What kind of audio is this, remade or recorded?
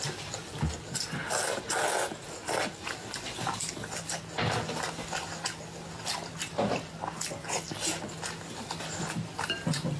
recorded